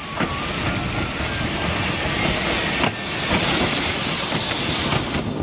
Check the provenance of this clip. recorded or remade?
recorded